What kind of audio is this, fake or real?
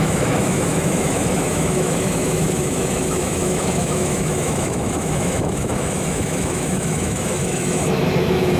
fake